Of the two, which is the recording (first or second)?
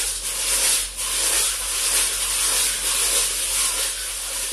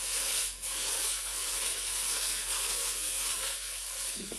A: first